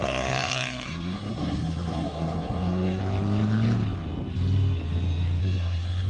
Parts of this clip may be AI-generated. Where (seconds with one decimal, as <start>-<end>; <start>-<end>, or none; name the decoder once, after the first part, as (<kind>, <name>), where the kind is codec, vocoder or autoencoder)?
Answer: 0.0-3.0 (codec, SNAC); 5.4-6.1